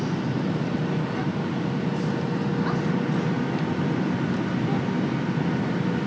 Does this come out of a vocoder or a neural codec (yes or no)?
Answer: no